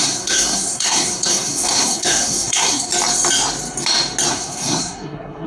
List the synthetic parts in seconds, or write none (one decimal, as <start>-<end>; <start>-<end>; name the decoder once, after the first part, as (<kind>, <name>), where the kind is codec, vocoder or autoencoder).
0.0-2.9 (codec, SNAC); 4.3-5.5